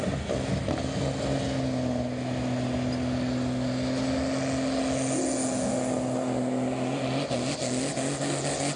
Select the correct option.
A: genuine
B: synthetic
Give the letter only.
A